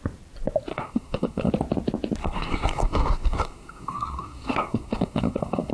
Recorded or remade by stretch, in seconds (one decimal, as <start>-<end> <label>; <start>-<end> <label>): 0.0-0.7 recorded; 0.7-1.5 remade; 1.5-2.2 recorded; 2.2-5.7 remade